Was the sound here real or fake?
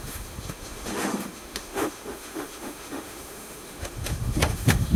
fake